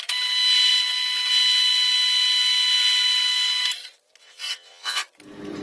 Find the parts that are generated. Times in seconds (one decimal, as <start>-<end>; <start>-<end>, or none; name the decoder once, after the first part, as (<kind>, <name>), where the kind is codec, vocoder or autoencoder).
4.2-5.0 (vocoder, WaveNeXt)